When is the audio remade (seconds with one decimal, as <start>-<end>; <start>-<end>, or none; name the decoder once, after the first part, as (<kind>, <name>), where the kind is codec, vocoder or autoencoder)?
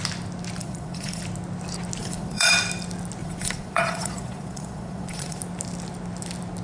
0.6-1.2 (vocoder, Vocos); 2.0-2.5; 3.2-5.4